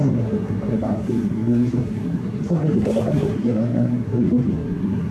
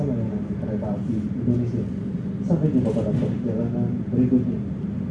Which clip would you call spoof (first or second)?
first